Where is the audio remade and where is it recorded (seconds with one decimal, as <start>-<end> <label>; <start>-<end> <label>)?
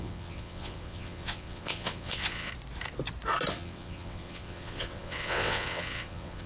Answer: 0.0-2.5 remade; 2.5-3.5 recorded; 3.5-6.5 remade